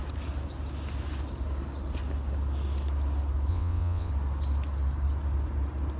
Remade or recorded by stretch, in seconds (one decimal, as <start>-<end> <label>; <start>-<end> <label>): 0.0-3.5 recorded; 3.5-4.1 remade; 4.1-6.0 recorded